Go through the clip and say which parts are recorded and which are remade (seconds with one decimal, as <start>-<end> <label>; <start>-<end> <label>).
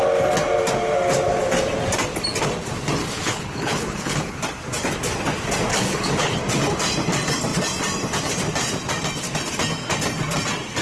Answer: 0.0-3.0 recorded; 3.0-4.4 remade; 4.4-5.7 recorded; 5.7-6.4 remade; 6.4-10.8 recorded